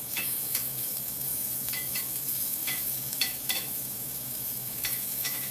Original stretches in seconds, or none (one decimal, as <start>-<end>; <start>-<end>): none